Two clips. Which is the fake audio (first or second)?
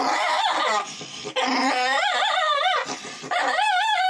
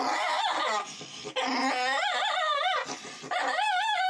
first